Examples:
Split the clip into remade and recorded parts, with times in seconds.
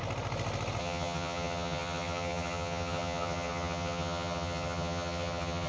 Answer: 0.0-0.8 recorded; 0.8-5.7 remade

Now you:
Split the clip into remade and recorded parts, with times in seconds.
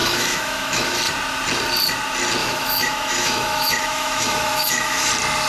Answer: 0.0-1.0 remade; 1.0-2.4 recorded; 2.4-5.1 remade; 5.1-5.5 recorded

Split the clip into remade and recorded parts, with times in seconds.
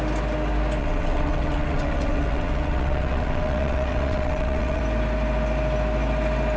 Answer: 0.0-0.8 recorded; 0.8-4.8 remade; 4.8-6.6 recorded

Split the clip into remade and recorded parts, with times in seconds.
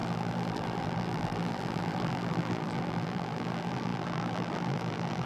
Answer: 0.0-5.2 remade